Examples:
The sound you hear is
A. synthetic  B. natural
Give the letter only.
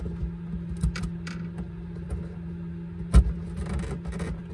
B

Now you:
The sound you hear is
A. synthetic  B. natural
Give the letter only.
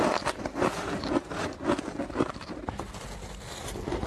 B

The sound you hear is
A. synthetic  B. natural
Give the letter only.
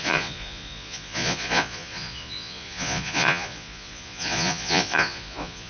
A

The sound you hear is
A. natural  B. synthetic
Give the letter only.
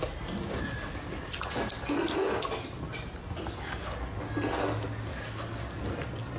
A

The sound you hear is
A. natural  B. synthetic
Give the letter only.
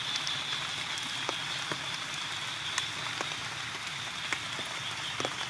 A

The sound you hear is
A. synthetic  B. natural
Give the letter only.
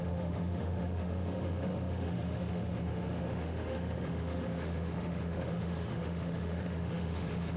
A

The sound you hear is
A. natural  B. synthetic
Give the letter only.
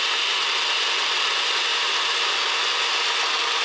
A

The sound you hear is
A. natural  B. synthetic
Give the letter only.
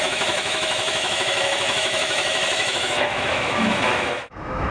B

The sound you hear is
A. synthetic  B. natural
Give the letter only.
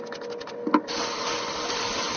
B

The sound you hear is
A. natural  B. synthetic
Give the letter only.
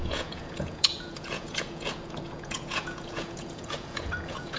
B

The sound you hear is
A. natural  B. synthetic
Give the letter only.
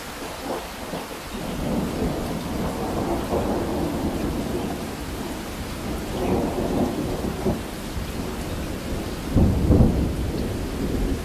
A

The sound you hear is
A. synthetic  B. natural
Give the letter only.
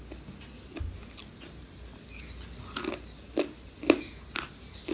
B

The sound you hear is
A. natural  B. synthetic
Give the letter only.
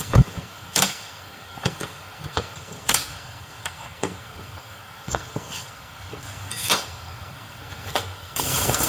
B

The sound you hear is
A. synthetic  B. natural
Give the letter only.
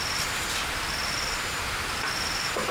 B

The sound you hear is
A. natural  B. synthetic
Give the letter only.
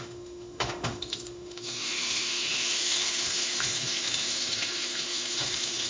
B